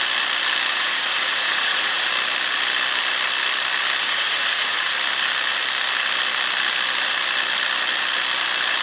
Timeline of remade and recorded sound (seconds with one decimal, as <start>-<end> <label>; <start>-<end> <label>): 0.0-0.7 recorded; 0.7-2.1 remade; 2.1-4.0 recorded; 4.0-4.9 remade; 4.9-8.8 recorded